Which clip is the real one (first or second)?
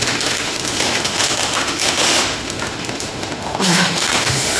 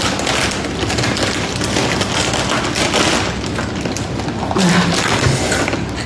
second